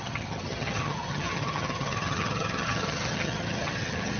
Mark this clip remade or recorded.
remade